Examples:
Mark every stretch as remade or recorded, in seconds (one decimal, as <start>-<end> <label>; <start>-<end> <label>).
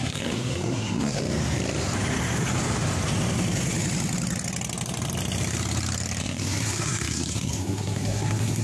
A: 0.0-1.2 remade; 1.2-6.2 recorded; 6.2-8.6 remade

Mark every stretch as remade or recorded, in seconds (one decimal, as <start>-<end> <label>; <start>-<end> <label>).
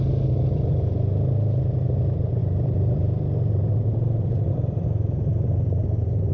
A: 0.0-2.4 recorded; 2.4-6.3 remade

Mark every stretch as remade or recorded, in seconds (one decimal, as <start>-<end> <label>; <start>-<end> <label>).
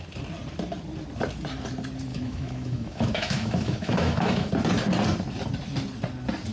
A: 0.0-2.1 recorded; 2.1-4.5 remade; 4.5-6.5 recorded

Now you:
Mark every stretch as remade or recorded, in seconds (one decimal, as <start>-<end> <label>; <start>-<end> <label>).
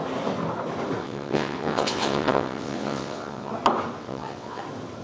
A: 0.0-1.0 recorded; 1.0-3.5 remade; 3.5-4.0 recorded; 4.0-4.6 remade; 4.6-5.0 recorded